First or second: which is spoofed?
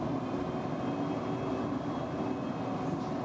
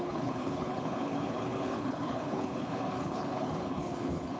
second